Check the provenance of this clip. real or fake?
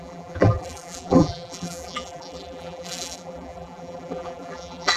fake